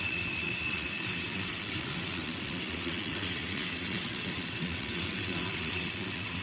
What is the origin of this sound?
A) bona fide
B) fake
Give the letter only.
B